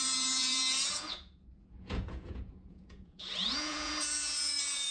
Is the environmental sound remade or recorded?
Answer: remade